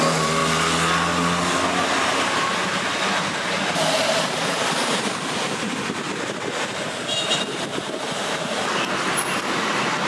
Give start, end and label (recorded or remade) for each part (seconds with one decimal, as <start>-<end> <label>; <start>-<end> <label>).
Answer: 0.0-0.4 remade; 0.4-1.8 recorded; 1.8-10.1 remade